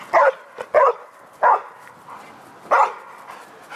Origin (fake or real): real